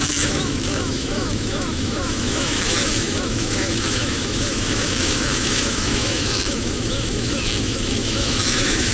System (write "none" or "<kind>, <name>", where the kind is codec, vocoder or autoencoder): autoencoder, DAC-VAE